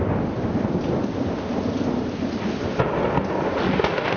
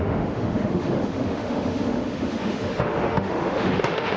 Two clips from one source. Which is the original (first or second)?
first